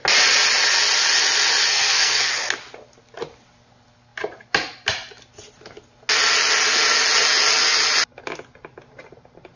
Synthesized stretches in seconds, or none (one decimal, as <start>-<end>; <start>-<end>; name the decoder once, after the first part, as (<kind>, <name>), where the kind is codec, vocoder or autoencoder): 1.7-2.3 (codec, SNAC)